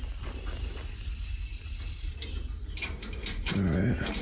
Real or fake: real